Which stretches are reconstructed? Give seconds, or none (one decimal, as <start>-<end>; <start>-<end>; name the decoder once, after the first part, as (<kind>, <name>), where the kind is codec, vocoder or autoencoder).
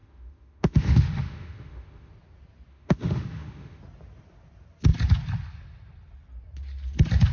0.0-2.1 (autoencoder, DAC-VAE); 2.7-3.8